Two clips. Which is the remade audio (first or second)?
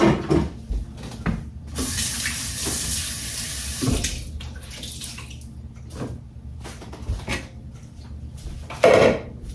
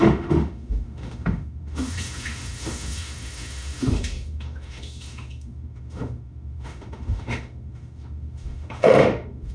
second